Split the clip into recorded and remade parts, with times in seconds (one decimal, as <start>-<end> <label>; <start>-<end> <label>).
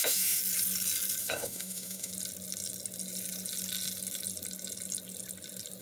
0.0-0.4 remade; 0.4-1.2 recorded; 1.2-2.1 remade; 2.1-5.8 recorded